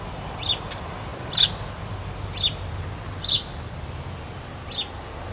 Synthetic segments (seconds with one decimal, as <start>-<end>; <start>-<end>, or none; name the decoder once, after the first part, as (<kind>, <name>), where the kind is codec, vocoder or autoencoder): none